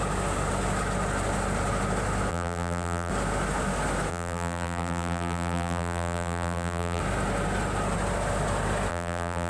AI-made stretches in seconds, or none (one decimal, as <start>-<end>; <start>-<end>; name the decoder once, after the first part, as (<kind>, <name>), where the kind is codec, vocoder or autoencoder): 2.3-3.1 (vocoder, BigVGAN v2); 4.1-7.0; 8.9-9.5